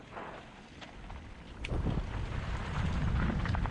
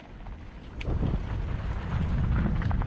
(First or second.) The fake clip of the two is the first